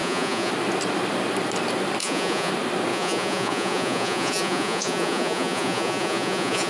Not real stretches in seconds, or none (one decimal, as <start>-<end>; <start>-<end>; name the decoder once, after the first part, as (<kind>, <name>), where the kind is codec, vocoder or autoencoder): 0.0-0.5 (vocoder, Vocos); 2.0-2.5; 2.9-6.7